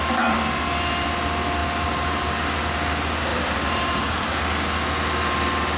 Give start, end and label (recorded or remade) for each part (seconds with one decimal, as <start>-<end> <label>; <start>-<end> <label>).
0.0-1.6 recorded; 1.6-2.3 remade; 2.3-3.3 recorded; 3.3-4.4 remade; 4.4-5.8 recorded